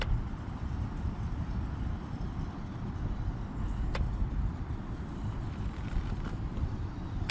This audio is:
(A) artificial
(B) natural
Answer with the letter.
A